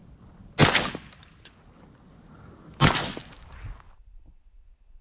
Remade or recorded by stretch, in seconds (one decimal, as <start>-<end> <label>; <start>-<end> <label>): 0.0-5.0 recorded